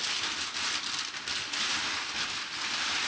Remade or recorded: recorded